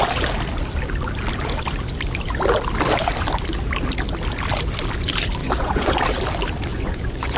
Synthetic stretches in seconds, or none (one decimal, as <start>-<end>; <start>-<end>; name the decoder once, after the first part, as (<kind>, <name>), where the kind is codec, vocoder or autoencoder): 5.4-5.9 (vocoder, Vocos); 6.7-7.4